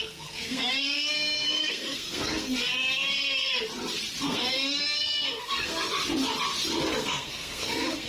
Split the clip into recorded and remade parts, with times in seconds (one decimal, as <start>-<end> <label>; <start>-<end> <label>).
0.0-3.5 remade; 3.5-4.2 recorded; 4.2-5.9 remade; 5.9-6.9 recorded; 6.9-8.1 remade